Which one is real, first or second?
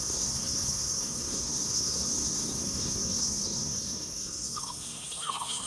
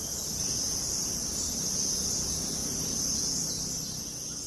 second